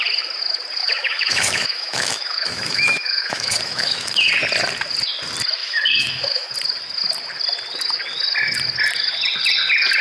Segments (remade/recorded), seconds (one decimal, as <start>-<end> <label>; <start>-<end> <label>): 0.0-0.8 recorded; 0.8-4.3 remade; 4.3-5.6 recorded; 5.6-6.5 remade; 6.5-10.0 recorded